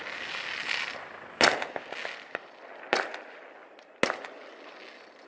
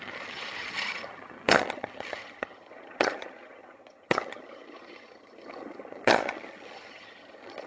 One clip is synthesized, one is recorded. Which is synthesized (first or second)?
second